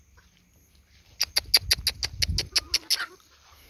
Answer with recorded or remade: recorded